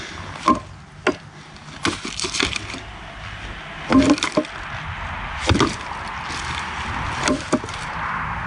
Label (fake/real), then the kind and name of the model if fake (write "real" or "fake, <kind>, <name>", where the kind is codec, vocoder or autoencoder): real